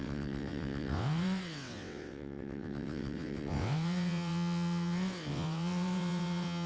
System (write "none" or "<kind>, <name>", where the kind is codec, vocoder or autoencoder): vocoder, WaveNeXt